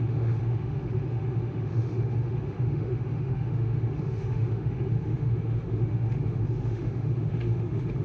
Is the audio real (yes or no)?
no